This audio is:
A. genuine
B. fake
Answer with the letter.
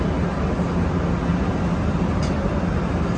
A